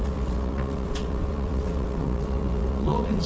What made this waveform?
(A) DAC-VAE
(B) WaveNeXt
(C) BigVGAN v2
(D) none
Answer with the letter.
B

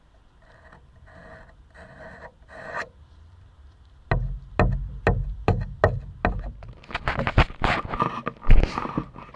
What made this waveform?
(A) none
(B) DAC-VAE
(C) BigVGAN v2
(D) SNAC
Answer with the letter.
A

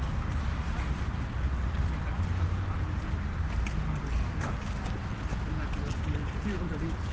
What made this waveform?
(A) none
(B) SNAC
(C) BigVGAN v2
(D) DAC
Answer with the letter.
A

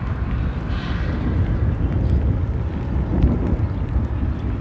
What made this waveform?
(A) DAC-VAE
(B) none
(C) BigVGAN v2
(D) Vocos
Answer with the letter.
B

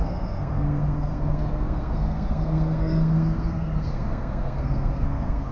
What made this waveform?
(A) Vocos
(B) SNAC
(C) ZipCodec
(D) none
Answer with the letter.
B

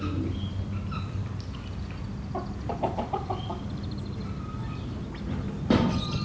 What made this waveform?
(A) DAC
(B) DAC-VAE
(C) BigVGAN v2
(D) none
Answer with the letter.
D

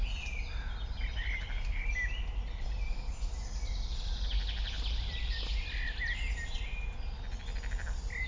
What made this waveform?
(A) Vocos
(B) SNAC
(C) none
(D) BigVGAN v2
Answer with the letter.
C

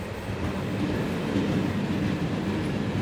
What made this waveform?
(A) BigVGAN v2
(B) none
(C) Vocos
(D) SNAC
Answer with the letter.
B